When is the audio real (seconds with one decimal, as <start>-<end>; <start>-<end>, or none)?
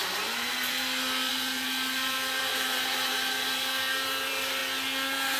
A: 4.6-5.4